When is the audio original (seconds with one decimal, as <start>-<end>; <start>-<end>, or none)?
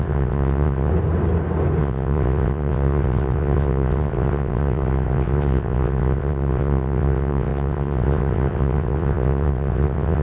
0.9-1.8